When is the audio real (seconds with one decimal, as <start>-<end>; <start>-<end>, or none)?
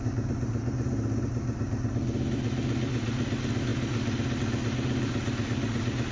0.0-6.1